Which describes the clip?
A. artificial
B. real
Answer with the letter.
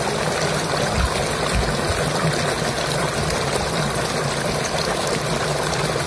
B